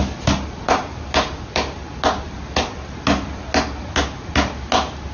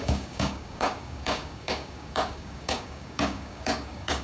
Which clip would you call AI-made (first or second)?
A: second